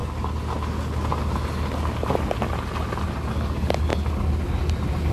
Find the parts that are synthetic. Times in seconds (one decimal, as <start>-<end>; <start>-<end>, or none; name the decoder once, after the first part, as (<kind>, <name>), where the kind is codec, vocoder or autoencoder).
none